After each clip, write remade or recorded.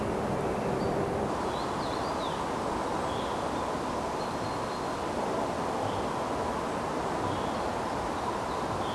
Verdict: recorded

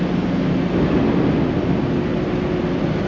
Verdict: recorded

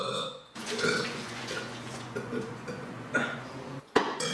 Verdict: remade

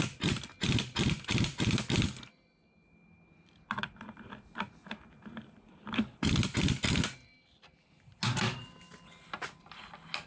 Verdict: remade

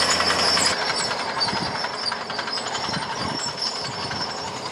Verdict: recorded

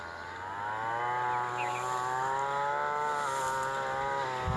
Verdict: recorded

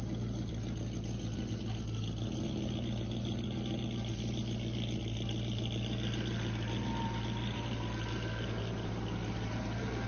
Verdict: recorded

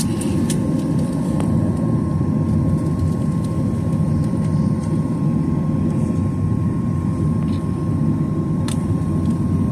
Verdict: remade